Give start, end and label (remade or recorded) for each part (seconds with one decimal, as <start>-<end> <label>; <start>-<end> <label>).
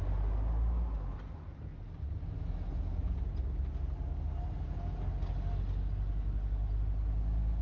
0.0-7.6 recorded